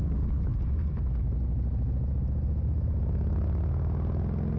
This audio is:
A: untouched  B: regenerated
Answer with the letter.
A